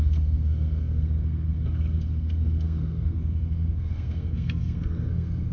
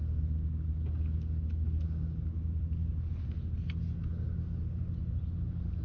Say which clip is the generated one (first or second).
first